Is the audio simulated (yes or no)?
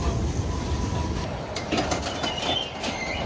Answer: no